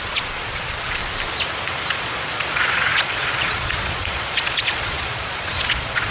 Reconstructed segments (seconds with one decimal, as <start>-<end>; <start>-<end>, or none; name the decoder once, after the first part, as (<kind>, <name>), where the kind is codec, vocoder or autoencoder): 0.0-1.0 (vocoder, Vocos); 1.9-6.1